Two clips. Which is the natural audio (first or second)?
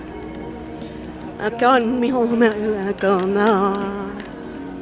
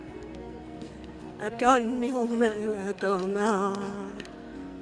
first